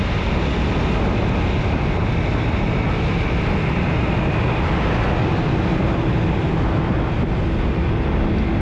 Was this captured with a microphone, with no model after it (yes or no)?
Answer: yes